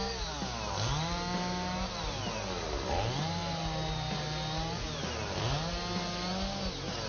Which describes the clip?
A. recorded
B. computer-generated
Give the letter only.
A